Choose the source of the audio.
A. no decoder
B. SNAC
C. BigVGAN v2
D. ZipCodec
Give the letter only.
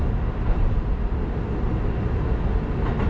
A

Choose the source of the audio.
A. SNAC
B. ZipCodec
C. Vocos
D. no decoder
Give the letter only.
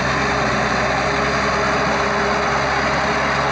D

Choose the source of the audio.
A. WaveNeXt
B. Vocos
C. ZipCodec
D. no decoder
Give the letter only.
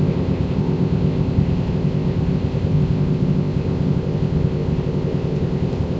C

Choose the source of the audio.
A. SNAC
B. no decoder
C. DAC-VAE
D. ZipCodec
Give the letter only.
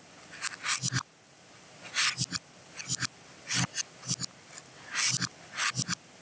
B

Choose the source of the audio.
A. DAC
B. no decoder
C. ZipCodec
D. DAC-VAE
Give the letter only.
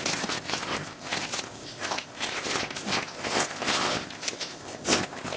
C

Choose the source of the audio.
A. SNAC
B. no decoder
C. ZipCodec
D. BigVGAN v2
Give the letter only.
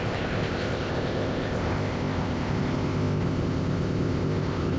C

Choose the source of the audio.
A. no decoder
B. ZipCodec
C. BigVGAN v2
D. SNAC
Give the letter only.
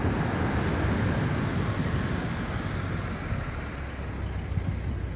A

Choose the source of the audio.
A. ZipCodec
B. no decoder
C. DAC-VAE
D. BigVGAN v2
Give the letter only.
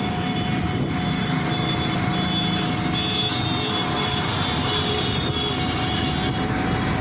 B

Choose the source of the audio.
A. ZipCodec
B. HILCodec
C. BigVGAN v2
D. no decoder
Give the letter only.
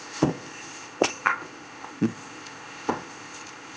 A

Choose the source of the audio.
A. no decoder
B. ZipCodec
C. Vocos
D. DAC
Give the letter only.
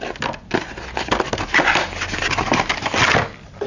A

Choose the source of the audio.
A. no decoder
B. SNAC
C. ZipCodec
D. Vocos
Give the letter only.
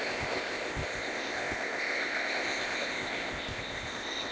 C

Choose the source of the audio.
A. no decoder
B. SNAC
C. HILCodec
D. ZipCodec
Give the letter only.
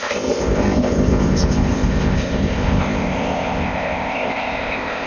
D